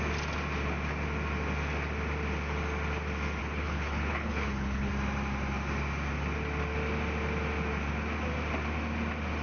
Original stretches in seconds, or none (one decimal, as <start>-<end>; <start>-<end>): 0.0-3.4; 4.9-9.4